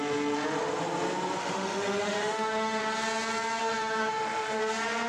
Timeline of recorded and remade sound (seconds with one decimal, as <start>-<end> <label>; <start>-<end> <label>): 0.0-1.4 recorded; 1.4-2.8 remade; 2.8-3.6 recorded; 3.6-4.6 remade; 4.6-5.1 recorded